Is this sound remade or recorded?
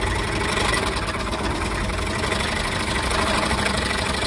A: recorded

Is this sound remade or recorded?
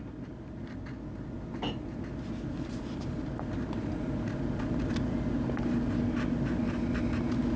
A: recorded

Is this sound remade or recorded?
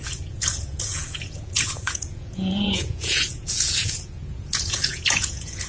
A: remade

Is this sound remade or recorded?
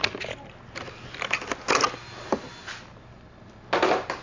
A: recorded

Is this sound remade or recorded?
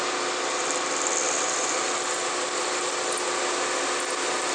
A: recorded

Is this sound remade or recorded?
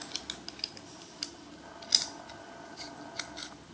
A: recorded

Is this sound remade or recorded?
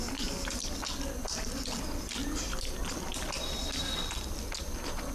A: recorded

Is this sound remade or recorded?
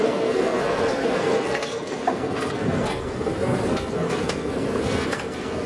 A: remade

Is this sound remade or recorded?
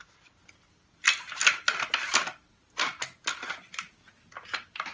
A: recorded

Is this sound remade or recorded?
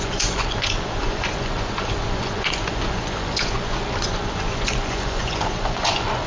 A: remade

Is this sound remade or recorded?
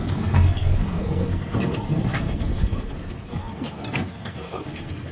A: remade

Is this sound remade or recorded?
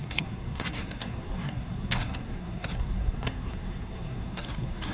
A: remade